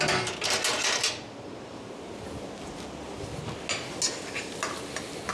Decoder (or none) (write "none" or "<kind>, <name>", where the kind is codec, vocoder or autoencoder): none